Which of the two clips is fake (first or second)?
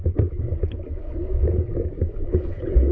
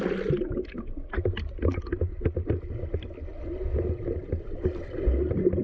first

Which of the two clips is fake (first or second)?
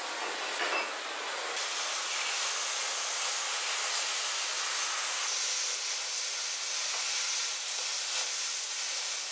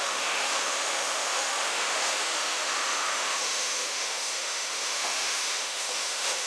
second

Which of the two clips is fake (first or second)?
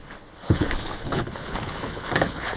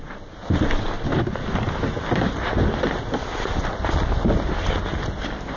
first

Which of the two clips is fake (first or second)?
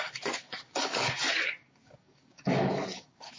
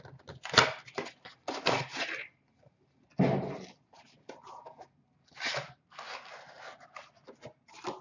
first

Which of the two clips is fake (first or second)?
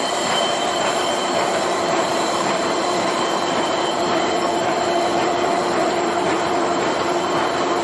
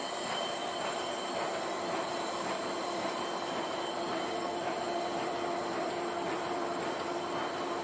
first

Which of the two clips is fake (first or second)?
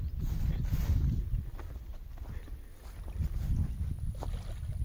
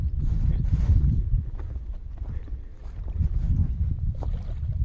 second